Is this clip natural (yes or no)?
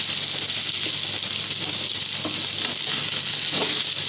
yes